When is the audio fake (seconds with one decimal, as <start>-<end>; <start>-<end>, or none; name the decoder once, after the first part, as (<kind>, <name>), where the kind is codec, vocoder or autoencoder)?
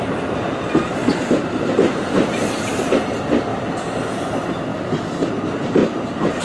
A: 1.1-2.7 (vocoder, BigVGAN v2); 4.7-5.3; 5.8-6.4